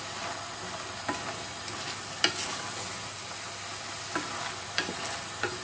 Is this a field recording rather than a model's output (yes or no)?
yes